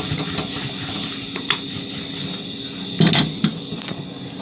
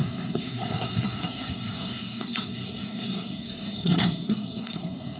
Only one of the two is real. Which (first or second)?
first